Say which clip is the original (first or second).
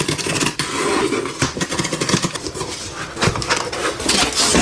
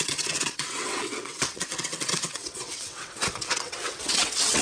first